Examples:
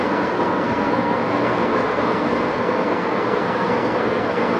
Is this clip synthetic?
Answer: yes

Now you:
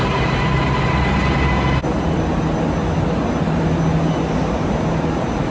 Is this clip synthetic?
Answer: no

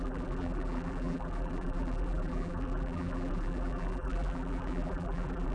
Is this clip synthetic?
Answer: yes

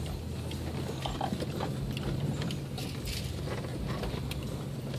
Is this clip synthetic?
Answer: no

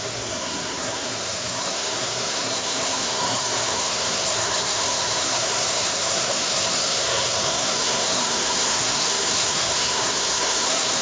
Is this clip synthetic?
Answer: yes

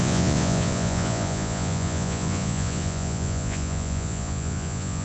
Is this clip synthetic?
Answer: yes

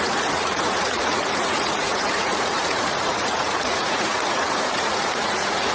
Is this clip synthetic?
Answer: yes